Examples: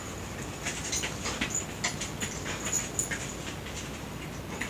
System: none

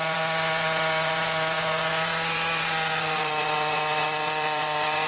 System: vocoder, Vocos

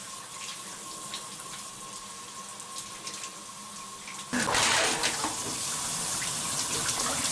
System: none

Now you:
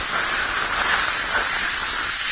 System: none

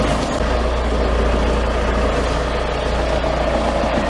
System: none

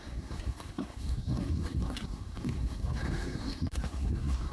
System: codec, SNAC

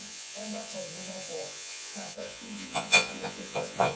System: vocoder, Vocos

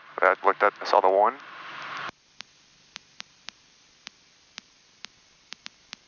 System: none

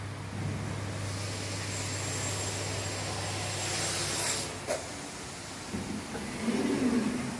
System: none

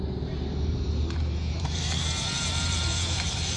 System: vocoder, BigVGAN v2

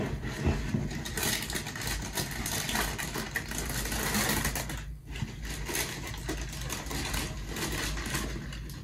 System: none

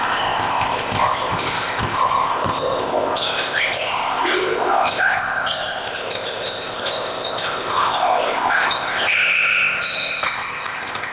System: codec, ZipCodec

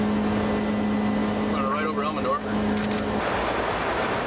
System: none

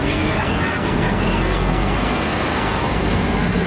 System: codec, SNAC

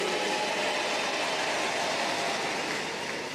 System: none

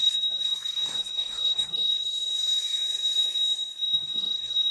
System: codec, SNAC